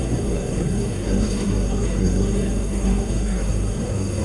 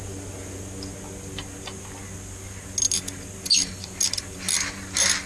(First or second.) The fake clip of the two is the first